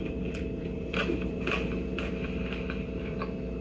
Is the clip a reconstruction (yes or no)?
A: yes